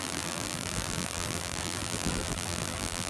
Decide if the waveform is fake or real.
fake